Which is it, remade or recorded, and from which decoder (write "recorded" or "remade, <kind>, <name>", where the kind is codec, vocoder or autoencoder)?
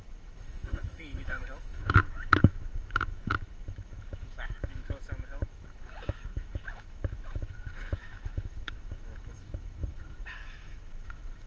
remade, autoencoder, DAC-VAE